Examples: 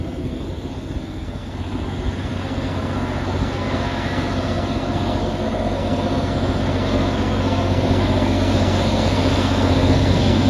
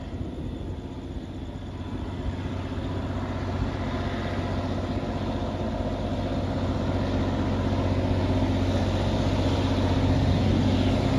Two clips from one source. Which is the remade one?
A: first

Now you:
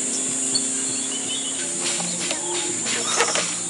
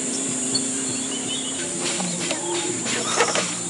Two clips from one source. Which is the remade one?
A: second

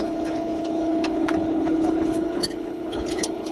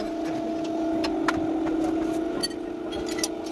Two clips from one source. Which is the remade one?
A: first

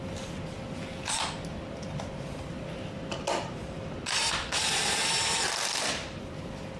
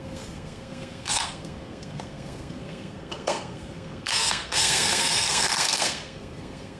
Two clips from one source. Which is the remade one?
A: second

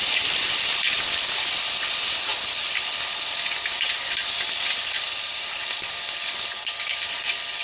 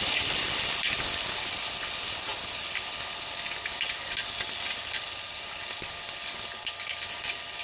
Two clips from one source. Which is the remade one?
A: first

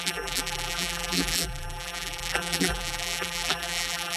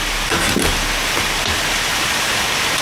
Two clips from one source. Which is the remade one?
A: first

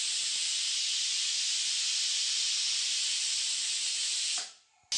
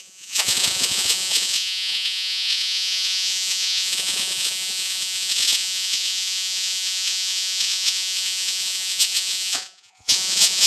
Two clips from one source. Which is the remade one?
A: second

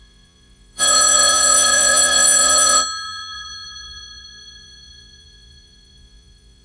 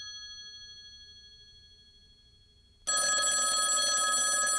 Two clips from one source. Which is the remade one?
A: first